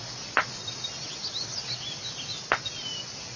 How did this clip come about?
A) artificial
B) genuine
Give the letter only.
B